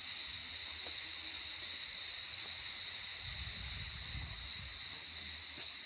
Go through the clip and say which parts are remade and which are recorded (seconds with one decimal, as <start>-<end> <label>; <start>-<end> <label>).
0.0-5.9 recorded